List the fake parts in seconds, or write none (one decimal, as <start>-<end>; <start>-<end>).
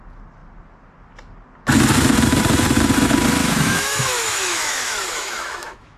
3.4-6.0